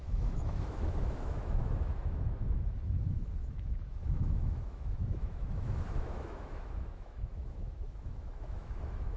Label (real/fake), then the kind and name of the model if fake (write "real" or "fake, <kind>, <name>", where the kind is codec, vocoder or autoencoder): fake, autoencoder, DAC-VAE